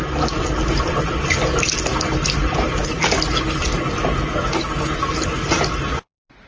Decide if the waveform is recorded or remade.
recorded